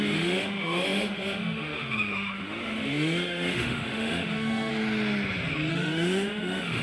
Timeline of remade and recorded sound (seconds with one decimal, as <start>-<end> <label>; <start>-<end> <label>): 0.0-4.7 remade; 4.7-5.7 recorded; 5.7-6.8 remade